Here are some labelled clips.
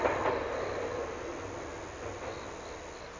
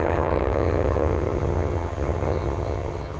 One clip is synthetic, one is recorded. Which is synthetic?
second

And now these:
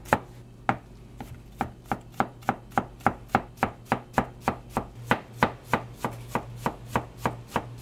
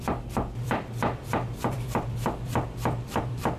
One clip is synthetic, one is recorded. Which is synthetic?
second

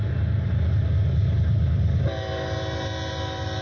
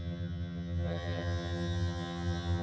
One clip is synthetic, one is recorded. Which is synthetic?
second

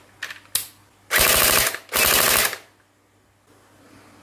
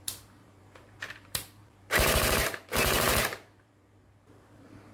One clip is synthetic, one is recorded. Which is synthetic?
second